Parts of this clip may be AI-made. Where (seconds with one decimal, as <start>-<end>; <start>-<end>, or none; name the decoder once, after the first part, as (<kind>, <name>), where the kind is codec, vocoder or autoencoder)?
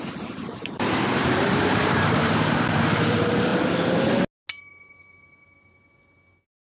0.0-3.5 (vocoder, BigVGAN v2)